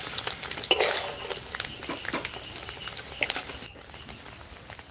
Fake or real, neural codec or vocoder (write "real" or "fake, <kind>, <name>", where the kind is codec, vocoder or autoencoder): real